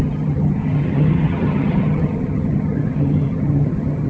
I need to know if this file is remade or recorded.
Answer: remade